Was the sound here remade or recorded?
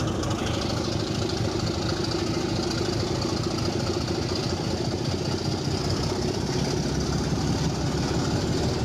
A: recorded